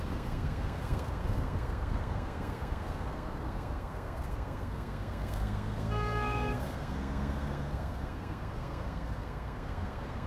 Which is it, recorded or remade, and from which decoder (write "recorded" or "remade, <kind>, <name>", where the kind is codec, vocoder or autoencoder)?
remade, codec, SNAC